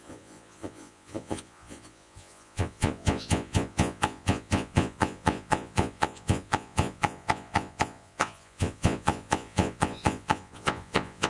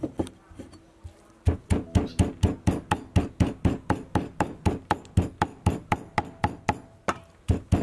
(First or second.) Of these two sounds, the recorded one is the second